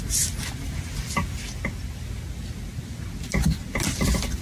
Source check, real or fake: real